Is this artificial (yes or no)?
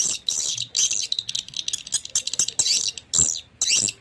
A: no